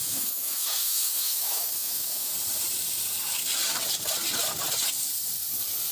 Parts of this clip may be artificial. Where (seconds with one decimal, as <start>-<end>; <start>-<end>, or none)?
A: 0.0-2.3